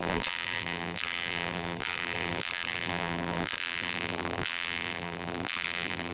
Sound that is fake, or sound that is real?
fake